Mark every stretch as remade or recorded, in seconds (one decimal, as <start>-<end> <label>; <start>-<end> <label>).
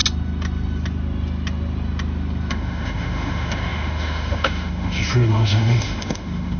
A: 0.0-2.5 recorded; 2.5-6.6 remade